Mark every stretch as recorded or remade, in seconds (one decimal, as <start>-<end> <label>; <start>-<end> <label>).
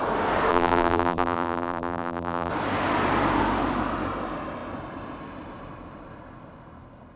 0.0-0.5 recorded; 0.5-2.5 remade; 2.5-7.2 recorded